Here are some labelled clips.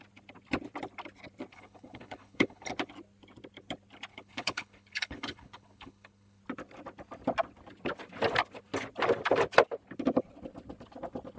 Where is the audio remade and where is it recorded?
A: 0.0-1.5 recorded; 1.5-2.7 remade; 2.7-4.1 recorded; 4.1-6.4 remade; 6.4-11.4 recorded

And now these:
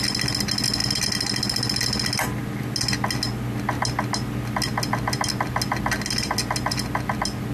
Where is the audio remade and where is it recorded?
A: 0.0-7.5 recorded

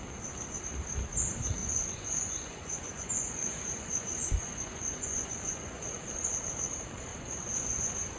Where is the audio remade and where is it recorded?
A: 0.0-1.6 recorded; 1.6-6.1 remade; 6.1-7.1 recorded; 7.1-8.2 remade